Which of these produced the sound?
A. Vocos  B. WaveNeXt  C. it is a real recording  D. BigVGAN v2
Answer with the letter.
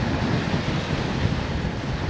C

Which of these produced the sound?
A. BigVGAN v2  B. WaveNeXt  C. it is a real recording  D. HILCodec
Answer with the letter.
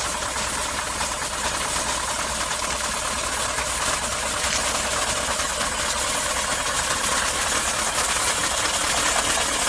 C